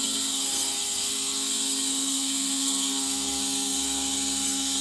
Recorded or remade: remade